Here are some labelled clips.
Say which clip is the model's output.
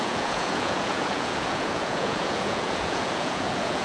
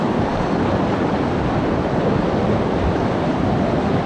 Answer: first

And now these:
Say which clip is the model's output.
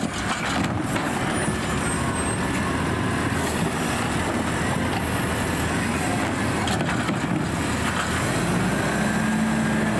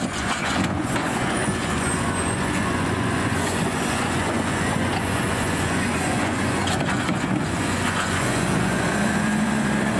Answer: second